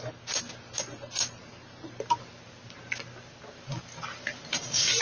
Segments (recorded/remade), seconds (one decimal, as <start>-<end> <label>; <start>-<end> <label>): 0.0-4.1 recorded; 4.1-5.0 remade